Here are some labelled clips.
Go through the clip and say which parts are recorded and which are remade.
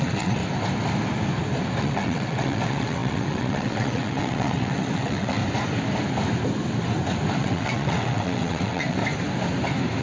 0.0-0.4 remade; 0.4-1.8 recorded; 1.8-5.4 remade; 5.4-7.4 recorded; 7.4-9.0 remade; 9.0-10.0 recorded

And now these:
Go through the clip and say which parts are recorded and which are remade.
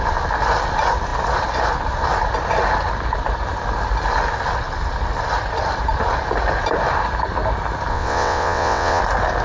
0.0-7.9 recorded; 7.9-9.0 remade; 9.0-9.4 recorded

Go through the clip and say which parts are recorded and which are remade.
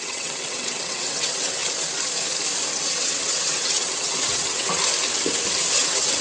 0.0-1.6 remade; 1.6-2.7 recorded; 2.7-4.8 remade; 4.8-5.8 recorded; 5.8-6.2 remade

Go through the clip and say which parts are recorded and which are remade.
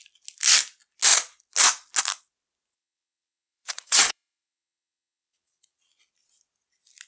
0.0-2.7 recorded; 2.7-6.0 remade; 6.0-7.1 recorded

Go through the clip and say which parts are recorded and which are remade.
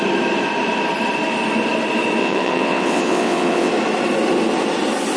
0.0-2.2 recorded; 2.2-3.7 remade; 3.7-5.2 recorded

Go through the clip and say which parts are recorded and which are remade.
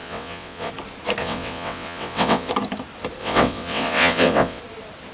0.0-0.7 remade; 0.7-1.2 recorded; 1.2-2.5 remade; 2.5-3.2 recorded; 3.2-4.6 remade; 4.6-5.1 recorded